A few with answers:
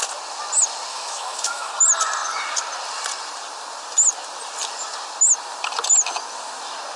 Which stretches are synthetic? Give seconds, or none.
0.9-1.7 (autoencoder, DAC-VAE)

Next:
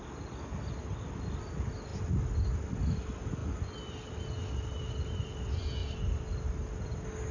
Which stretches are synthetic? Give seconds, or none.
none

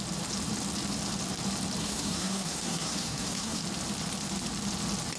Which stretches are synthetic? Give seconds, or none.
1.8-3.6 (codec, SNAC)

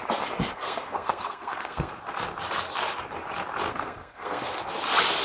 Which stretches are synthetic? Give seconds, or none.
0.5-1.9 (codec, SNAC); 3.7-4.6